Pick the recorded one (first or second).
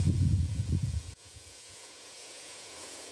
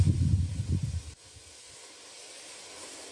second